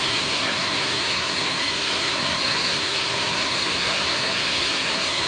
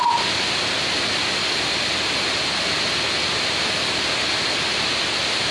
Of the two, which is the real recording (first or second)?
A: second